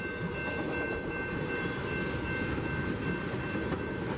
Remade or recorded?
recorded